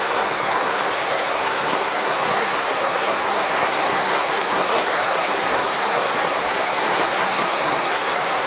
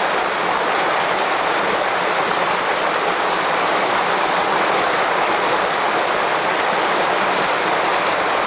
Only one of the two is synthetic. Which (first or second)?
first